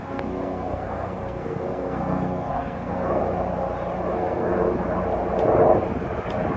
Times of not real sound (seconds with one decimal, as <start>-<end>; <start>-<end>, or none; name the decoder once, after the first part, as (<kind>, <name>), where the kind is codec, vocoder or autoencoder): 0.0-3.2 (codec, SNAC); 4.1-4.5